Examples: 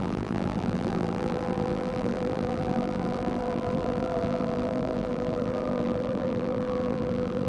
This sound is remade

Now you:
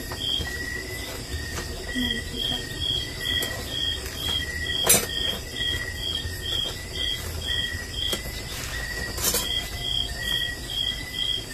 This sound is recorded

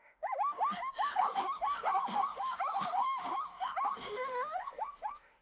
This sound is remade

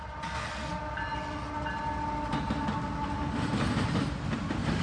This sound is recorded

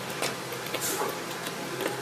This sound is recorded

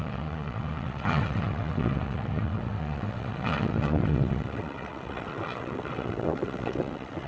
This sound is remade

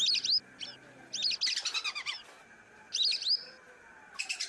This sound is recorded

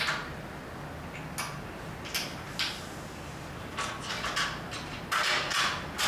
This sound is recorded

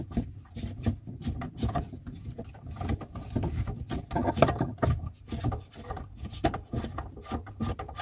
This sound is recorded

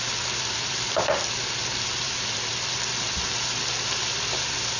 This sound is remade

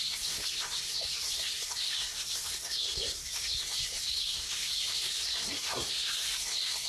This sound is remade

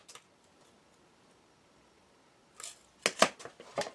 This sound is recorded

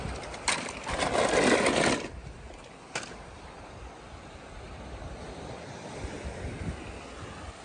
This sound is recorded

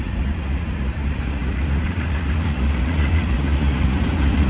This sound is remade